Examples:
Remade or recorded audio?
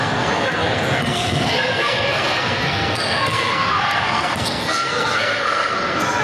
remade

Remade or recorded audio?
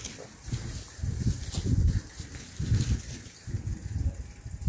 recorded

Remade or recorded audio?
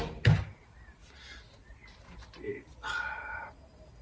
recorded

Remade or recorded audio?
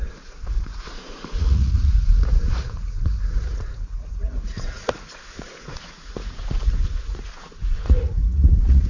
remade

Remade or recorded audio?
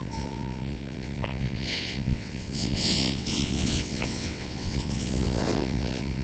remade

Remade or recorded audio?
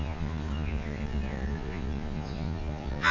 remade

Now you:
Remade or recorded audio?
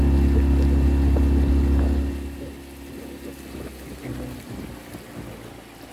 recorded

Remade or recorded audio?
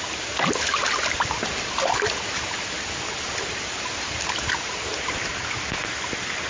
recorded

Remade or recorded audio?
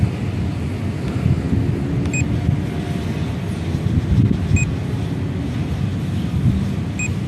recorded